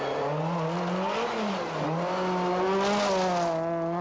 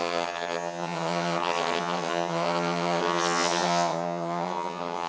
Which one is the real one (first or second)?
first